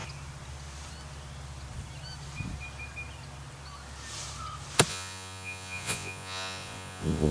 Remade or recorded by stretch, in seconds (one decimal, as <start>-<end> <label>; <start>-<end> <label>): 0.0-4.9 recorded; 4.9-7.3 remade